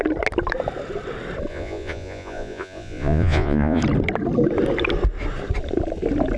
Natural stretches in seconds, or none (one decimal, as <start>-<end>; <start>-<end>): 0.0-1.5; 3.8-6.4